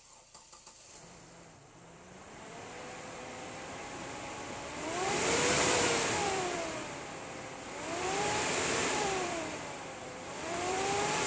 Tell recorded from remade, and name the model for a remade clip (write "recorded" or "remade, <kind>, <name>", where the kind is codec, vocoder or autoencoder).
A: remade, vocoder, BigVGAN v2